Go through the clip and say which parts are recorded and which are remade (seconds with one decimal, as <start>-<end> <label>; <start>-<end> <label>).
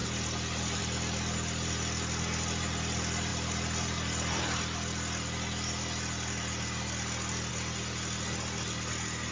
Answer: 0.0-9.3 recorded